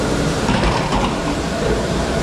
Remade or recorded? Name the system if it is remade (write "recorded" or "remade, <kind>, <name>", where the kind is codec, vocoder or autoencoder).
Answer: remade, vocoder, BigVGAN v2